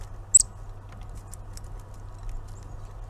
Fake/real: real